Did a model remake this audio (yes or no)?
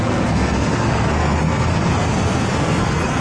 yes